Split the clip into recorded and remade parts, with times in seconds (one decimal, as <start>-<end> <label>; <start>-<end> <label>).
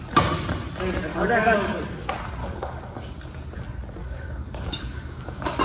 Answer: 0.0-1.1 recorded; 1.1-1.8 remade; 1.8-2.4 recorded; 2.4-3.1 remade; 3.1-4.0 recorded; 4.0-5.6 remade